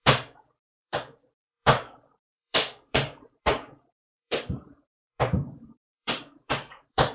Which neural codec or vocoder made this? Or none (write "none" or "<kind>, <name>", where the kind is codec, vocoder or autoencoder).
vocoder, BigVGAN v2